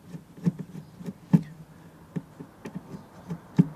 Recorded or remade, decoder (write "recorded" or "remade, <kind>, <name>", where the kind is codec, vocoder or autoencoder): recorded